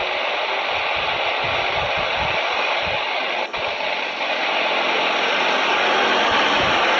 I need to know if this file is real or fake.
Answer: real